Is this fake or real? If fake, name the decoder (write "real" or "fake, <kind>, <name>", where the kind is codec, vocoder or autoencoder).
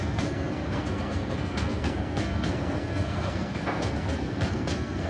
fake, codec, SNAC